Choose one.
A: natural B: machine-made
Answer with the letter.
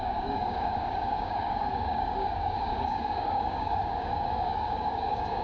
B